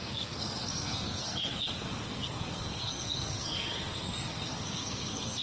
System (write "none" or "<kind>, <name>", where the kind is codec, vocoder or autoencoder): codec, SNAC